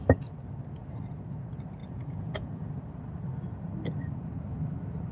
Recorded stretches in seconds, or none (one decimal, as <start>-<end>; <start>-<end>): 0.0-1.8; 2.7-5.1